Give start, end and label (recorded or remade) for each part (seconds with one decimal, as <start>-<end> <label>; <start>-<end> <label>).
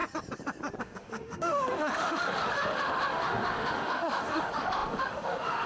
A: 0.0-0.8 recorded; 0.8-5.7 remade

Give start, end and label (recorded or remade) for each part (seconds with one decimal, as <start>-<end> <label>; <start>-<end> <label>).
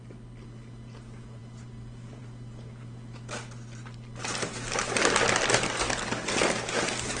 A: 0.0-7.2 recorded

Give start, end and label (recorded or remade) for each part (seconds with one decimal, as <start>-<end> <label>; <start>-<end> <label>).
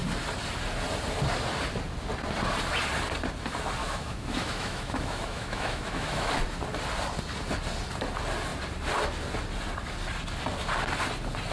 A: 0.0-3.8 recorded; 3.8-6.3 remade; 6.3-11.5 recorded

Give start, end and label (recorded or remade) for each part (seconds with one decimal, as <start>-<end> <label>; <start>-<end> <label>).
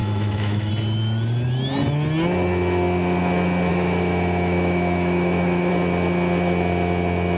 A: 0.0-0.7 remade; 0.7-3.7 recorded; 3.7-5.7 remade; 5.7-7.4 recorded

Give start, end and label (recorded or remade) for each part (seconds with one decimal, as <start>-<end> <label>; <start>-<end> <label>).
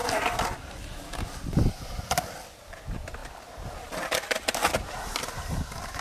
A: 0.0-6.0 recorded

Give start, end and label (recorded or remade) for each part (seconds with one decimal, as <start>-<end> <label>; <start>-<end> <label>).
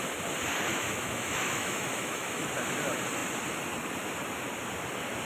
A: 0.0-0.7 recorded; 0.7-2.5 remade; 2.5-5.2 recorded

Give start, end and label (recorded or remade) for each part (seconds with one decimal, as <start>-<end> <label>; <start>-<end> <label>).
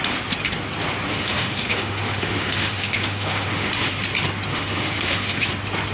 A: 0.0-1.1 recorded; 1.1-3.7 remade; 3.7-4.5 recorded; 4.5-5.5 remade; 5.5-5.9 recorded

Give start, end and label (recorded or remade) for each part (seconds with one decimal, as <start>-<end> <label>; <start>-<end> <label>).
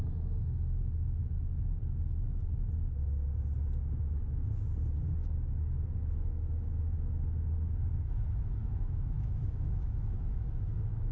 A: 0.0-6.0 recorded; 6.0-6.8 remade; 6.8-8.6 recorded; 8.6-11.1 remade